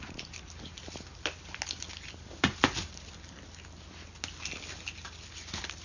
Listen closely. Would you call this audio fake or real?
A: real